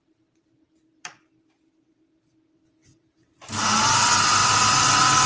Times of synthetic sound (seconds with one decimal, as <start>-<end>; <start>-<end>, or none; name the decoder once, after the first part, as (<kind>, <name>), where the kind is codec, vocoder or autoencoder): 4.4-5.3 (vocoder, BigVGAN v2)